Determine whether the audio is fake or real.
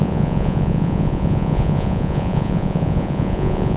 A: fake